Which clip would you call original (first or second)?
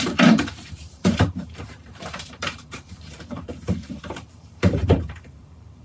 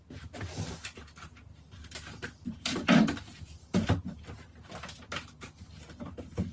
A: second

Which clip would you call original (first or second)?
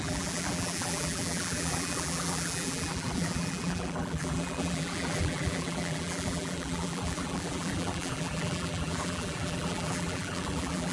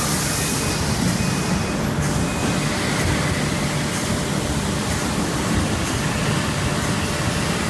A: second